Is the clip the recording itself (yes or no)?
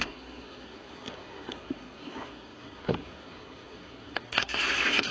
no